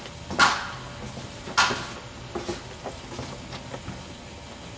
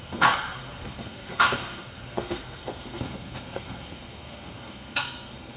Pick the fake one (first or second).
second